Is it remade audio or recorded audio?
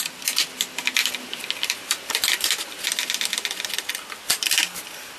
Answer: recorded